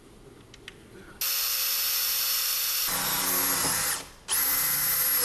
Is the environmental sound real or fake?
real